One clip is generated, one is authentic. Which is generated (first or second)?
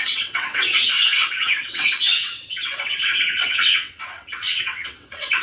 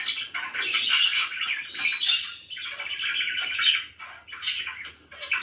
first